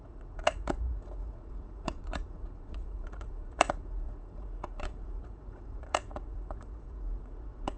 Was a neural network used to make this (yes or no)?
yes